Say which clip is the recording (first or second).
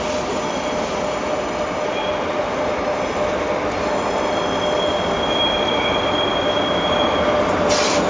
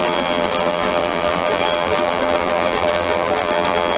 first